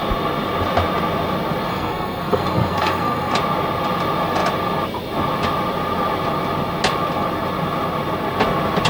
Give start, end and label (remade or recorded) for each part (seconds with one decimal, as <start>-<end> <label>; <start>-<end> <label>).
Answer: 0.0-1.7 recorded; 1.7-3.3 remade; 3.3-8.9 recorded